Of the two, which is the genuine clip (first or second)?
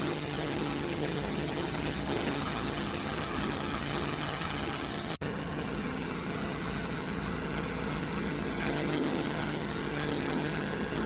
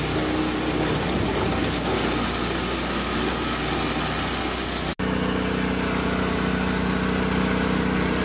second